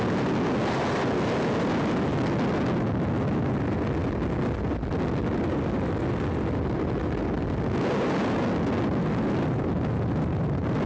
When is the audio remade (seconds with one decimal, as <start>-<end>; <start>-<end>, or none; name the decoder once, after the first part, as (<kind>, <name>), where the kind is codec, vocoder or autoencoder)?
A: none